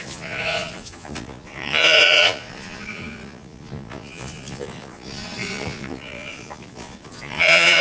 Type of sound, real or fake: fake